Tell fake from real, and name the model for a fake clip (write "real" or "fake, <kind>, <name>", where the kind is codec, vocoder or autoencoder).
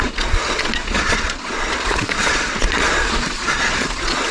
fake, vocoder, Vocos